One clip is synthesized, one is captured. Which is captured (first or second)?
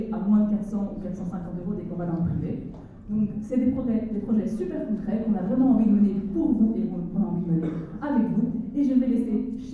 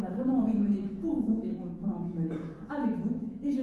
first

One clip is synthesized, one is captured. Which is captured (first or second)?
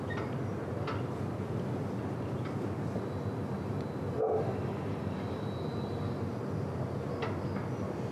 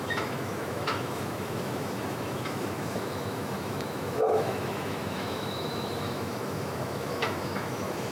first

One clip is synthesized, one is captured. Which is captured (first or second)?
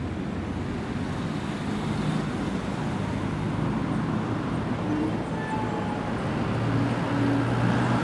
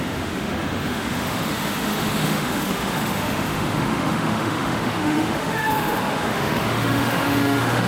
first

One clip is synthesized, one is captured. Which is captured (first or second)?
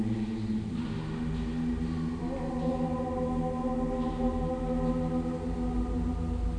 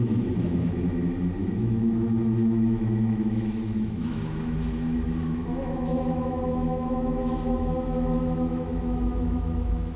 first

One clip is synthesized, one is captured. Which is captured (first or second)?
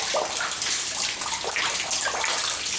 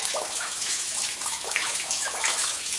first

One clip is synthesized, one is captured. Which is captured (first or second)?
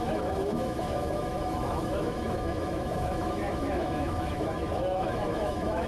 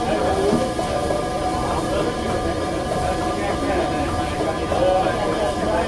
second